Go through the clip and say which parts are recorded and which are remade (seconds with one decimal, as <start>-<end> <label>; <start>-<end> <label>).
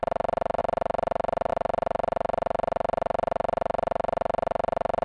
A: 0.0-5.0 recorded